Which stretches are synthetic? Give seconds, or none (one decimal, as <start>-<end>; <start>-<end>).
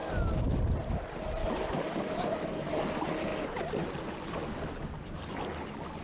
1.4-2.8